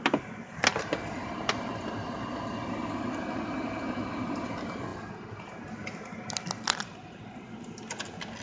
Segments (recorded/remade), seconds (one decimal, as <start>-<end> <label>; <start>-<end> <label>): 0.0-8.4 recorded